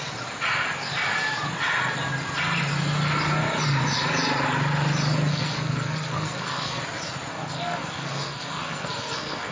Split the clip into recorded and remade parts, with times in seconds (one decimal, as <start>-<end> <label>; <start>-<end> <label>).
0.0-5.3 recorded; 5.3-6.8 remade; 6.8-7.3 recorded; 7.3-9.5 remade